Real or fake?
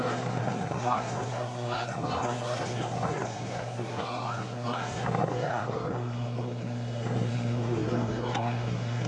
fake